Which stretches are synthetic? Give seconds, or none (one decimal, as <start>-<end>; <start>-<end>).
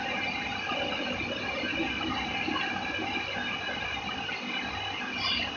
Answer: none